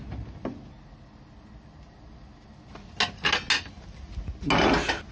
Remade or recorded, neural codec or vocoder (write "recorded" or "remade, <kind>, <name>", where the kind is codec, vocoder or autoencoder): recorded